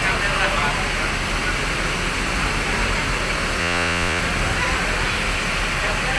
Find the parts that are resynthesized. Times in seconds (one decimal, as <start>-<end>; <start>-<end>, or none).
3.6-4.2

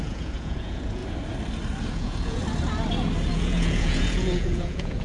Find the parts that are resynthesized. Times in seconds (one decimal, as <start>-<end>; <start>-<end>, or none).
0.0-1.0; 1.9-2.4; 3.3-5.0

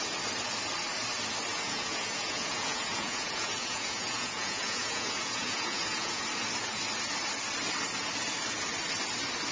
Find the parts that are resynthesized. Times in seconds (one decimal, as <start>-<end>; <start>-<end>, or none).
1.5-6.2

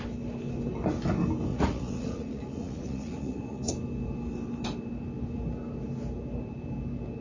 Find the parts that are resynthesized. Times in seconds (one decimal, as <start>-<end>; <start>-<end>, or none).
1.5-3.7

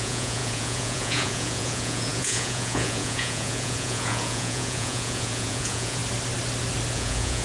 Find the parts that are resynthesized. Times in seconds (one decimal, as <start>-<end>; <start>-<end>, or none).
0.0-6.0; 6.9-7.4